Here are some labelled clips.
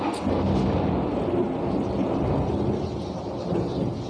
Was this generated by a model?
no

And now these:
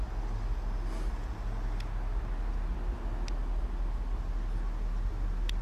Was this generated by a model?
no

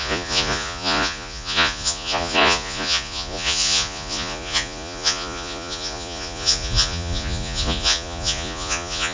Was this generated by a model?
yes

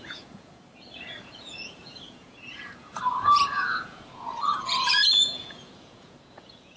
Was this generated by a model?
yes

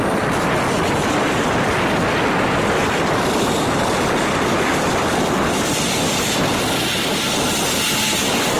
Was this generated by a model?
yes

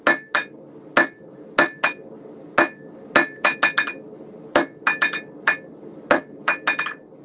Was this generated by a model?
no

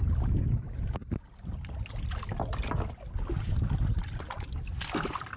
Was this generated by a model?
no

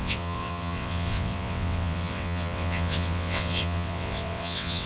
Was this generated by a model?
yes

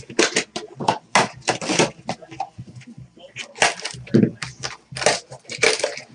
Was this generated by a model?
no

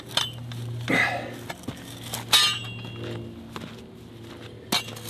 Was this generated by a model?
no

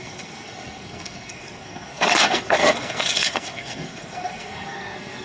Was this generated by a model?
yes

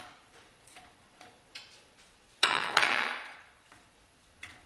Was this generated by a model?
yes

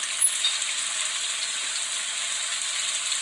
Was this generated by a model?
no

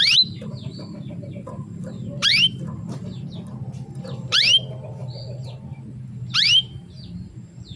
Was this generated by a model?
yes